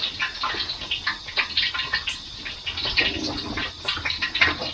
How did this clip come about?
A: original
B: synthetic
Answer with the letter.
A